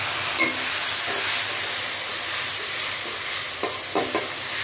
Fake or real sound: real